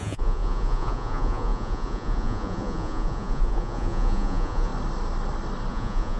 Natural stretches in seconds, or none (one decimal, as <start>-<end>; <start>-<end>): 4.7-5.7